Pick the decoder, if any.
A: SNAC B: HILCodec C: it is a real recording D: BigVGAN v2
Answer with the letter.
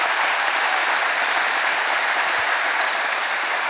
D